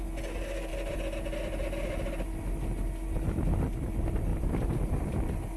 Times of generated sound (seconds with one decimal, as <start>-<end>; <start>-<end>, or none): 4.3-5.1